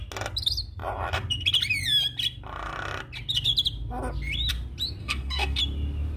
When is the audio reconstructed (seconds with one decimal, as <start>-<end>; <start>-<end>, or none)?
5.0-5.6